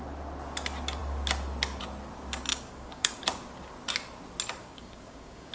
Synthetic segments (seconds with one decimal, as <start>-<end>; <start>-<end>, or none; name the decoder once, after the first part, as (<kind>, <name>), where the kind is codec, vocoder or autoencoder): 2.5-3.2 (codec, DAC); 4.6-5.5